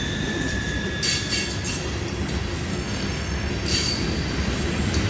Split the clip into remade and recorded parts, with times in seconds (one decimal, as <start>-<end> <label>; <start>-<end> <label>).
0.0-2.7 recorded; 2.7-3.5 remade; 3.5-5.1 recorded